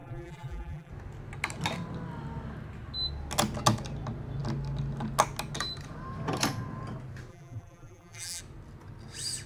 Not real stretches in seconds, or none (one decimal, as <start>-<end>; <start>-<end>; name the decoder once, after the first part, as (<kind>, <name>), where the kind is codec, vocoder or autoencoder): 0.0-0.9 (vocoder, BigVGAN v2); 7.3-8.4